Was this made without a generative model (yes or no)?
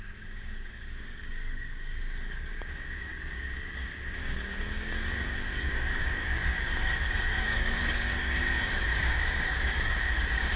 no